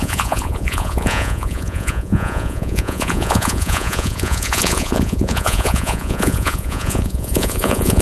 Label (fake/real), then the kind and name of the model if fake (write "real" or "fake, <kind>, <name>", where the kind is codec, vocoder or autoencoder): fake, vocoder, Vocos